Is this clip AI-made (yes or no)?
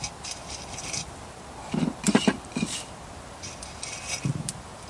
no